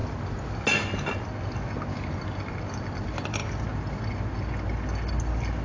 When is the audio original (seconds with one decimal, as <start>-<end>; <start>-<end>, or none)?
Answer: 0.0-5.6